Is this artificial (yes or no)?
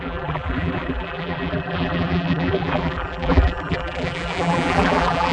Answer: yes